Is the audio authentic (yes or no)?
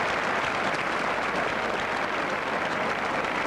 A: no